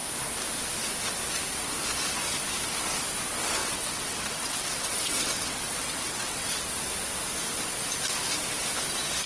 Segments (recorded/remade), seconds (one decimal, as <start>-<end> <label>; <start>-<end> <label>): 0.0-3.6 recorded; 3.6-6.7 remade; 6.7-9.3 recorded